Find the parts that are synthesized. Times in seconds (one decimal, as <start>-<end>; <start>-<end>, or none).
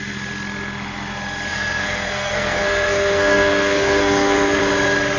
1.5-4.6